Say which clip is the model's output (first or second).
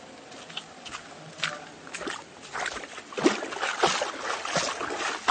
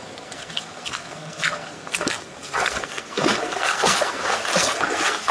second